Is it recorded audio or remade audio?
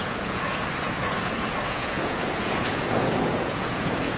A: remade